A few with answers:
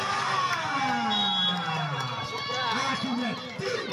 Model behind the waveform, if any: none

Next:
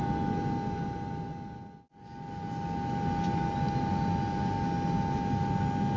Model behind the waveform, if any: none